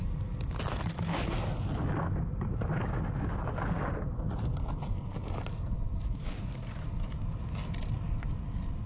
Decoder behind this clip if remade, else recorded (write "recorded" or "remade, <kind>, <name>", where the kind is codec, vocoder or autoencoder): recorded